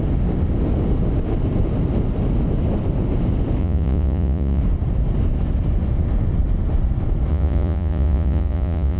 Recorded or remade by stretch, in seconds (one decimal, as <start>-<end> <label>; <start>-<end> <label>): 0.0-3.6 recorded; 3.6-4.6 remade; 4.6-7.3 recorded; 7.3-9.0 remade